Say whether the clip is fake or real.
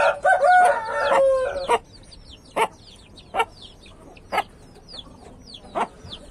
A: real